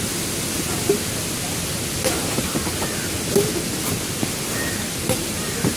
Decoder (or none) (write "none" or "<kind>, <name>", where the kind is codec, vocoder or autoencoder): none